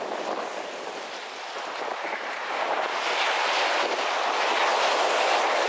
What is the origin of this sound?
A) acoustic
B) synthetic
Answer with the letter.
A